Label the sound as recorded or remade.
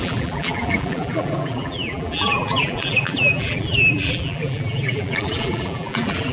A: remade